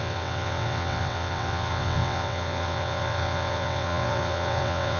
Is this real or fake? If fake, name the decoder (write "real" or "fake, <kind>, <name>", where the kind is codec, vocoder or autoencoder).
fake, vocoder, WaveNeXt